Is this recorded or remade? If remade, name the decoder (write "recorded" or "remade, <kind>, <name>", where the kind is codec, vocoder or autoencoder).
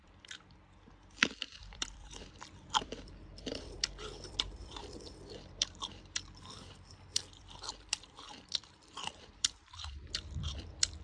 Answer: remade, vocoder, BigVGAN v2